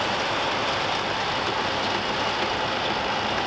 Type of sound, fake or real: real